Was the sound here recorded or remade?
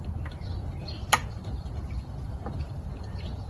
remade